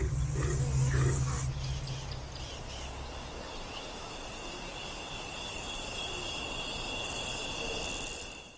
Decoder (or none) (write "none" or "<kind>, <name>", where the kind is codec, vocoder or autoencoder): none